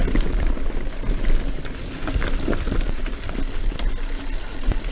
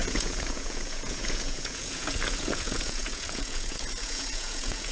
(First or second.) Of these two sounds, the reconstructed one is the second